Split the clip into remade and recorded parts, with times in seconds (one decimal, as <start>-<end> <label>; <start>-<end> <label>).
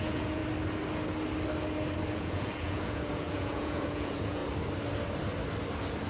0.0-0.4 remade; 0.4-2.1 recorded; 2.1-4.4 remade; 4.4-6.1 recorded